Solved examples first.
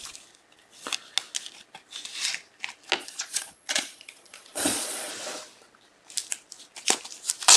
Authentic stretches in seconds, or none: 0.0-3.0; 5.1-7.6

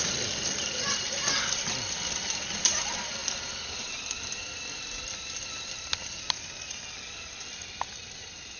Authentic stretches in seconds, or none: 0.0-8.6

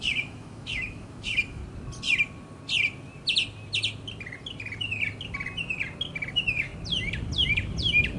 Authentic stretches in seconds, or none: 1.6-6.3; 6.7-8.2

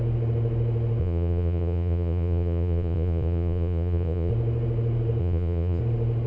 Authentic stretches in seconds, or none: 0.0-1.0; 4.3-5.2; 5.8-6.3

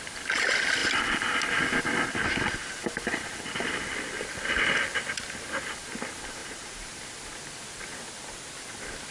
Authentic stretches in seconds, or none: 0.0-2.6; 3.8-6.4; 7.0-9.1